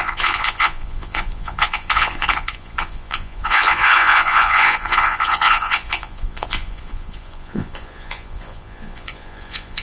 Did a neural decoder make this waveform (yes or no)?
yes